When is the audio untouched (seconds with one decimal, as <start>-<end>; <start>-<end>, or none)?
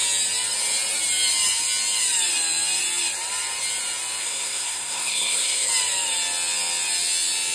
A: 0.0-4.2; 5.7-7.5